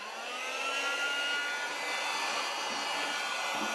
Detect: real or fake real